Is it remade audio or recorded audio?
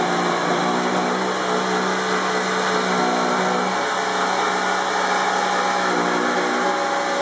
recorded